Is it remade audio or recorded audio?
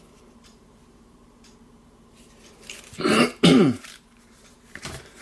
remade